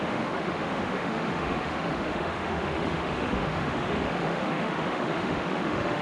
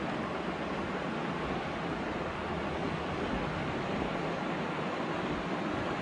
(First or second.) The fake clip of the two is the first